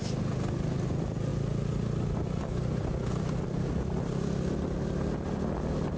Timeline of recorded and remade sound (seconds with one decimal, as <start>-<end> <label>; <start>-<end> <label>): 0.0-6.0 recorded